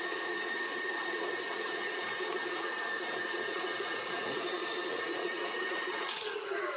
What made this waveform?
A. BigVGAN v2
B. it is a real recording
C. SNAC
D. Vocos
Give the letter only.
D